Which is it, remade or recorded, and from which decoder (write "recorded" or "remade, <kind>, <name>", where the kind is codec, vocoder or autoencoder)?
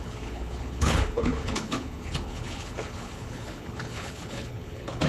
remade, codec, HILCodec